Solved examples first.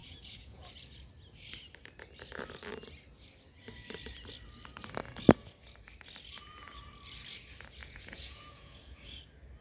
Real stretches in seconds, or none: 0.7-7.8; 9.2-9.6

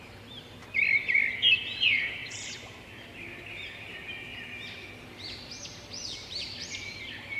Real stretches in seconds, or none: 0.6-1.5; 4.3-6.0

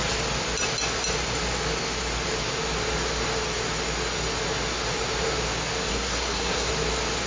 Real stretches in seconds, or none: 0.0-5.9; 6.7-7.3

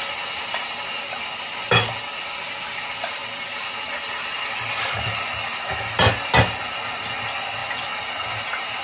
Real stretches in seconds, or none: 0.0-8.8

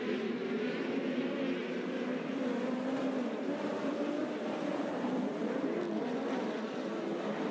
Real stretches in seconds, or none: 0.0-1.6; 5.8-7.5

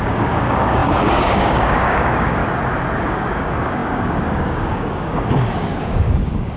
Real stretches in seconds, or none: 2.4-3.0